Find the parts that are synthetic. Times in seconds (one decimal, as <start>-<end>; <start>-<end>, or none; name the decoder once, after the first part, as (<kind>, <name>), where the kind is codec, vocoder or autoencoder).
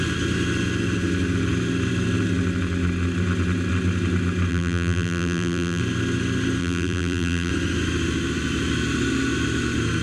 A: 4.5-5.8 (vocoder, BigVGAN v2); 6.6-7.5